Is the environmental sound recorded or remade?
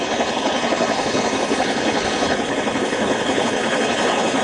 remade